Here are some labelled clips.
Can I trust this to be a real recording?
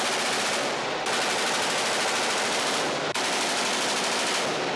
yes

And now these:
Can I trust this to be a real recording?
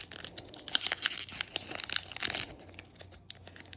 yes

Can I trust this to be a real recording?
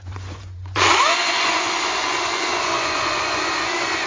no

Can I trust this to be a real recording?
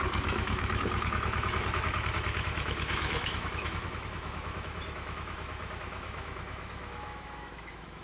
no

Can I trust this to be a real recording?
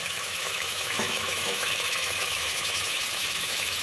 no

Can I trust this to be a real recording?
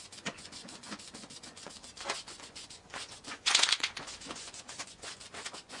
no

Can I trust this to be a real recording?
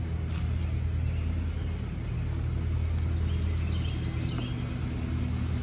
yes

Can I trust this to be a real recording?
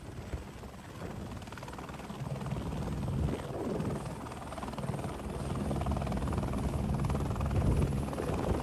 yes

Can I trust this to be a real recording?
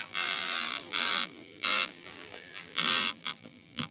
no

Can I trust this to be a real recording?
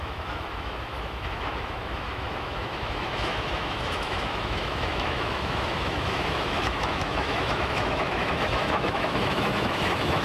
no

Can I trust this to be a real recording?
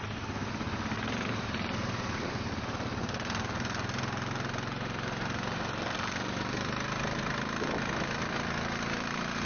yes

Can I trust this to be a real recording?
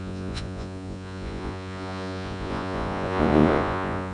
no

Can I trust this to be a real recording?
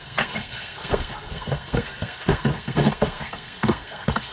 no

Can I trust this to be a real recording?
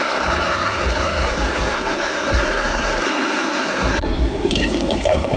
no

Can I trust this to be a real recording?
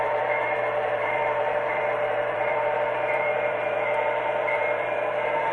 no